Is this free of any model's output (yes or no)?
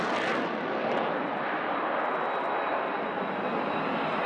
yes